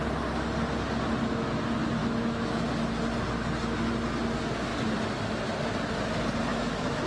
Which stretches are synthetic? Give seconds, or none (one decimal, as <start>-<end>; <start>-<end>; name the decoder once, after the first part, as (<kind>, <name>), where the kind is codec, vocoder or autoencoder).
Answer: 2.0-2.7 (autoencoder, DAC-VAE); 6.5-7.1